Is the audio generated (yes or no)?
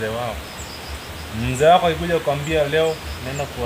no